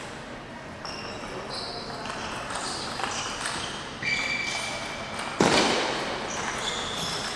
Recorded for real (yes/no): yes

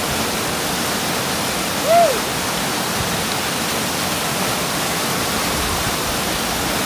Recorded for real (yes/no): yes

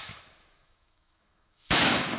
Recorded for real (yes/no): no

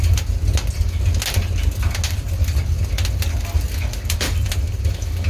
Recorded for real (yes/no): yes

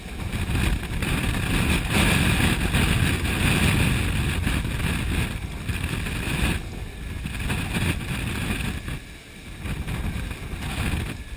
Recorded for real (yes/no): yes